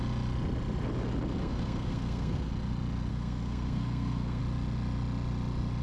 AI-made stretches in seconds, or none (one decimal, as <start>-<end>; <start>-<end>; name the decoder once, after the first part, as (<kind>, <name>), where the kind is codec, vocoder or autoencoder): 1.4-2.5 (codec, SNAC); 3.1-4.4